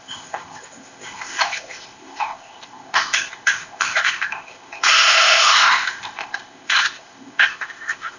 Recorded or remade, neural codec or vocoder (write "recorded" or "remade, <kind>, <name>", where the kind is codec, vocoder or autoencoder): remade, codec, ZipCodec